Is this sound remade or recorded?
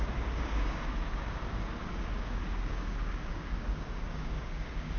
remade